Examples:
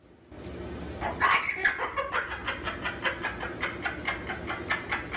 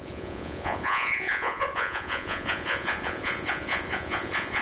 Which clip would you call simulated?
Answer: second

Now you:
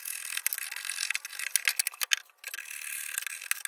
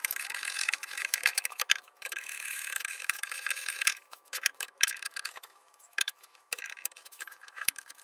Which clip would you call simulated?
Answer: second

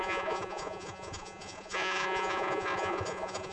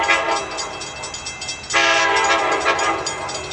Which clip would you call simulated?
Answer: first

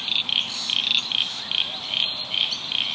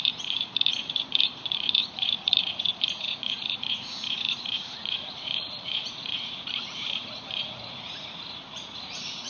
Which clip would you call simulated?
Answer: second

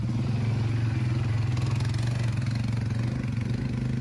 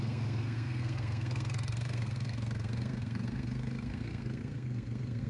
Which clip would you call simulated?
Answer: second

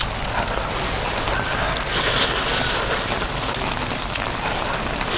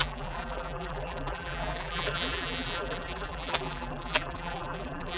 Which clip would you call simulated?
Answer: second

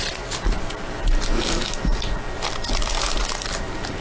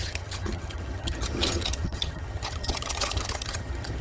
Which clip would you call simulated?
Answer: second